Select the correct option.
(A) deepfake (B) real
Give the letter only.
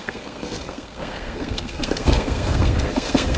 A